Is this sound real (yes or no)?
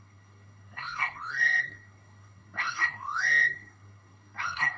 no